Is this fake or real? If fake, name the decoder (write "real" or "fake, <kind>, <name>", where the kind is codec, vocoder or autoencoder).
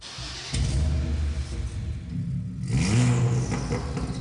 real